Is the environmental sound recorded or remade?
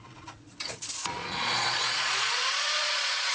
remade